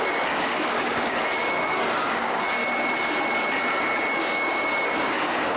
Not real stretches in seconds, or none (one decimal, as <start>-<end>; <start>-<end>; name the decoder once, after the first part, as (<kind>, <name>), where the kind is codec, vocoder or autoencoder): 0.0-2.4 (codec, DAC); 4.1-5.6